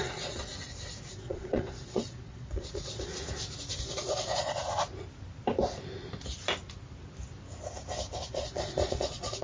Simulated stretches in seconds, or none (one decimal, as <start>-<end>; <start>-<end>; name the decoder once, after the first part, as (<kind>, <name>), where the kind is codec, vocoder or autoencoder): 0.0-0.5 (vocoder, Vocos); 1.1-3.1; 3.8-4.6; 8.3-9.4